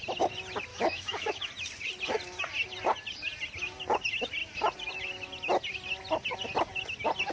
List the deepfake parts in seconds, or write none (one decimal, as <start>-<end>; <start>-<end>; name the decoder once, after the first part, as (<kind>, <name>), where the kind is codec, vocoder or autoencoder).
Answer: 0.7-1.5 (autoencoder, DAC-VAE)